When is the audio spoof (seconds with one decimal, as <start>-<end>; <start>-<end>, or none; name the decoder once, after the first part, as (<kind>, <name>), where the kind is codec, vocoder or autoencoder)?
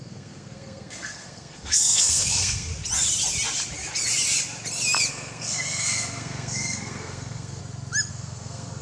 0.0-2.7 (codec, SNAC); 5.1-7.6; 8.1-8.8